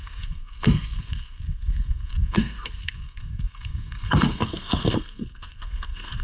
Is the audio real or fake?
fake